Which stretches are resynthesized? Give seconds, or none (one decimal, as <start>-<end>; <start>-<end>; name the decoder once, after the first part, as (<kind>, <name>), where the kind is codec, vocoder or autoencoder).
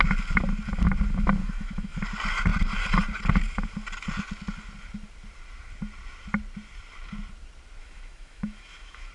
1.4-2.0 (autoencoder, DAC-VAE); 7.8-9.1